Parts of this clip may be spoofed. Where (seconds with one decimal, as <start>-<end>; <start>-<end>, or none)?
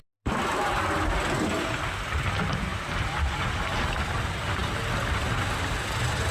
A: none